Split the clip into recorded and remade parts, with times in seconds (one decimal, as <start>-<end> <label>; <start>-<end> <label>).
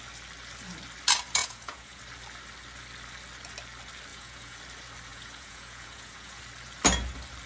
0.0-1.4 recorded; 1.4-2.0 remade; 2.0-4.1 recorded; 4.1-4.6 remade; 4.6-5.1 recorded; 5.1-6.4 remade; 6.4-7.5 recorded